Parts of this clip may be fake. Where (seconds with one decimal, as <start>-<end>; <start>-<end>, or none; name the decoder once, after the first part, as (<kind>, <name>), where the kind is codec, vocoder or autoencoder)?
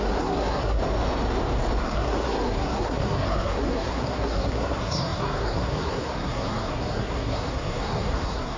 0.0-0.8 (codec, SNAC); 1.8-8.6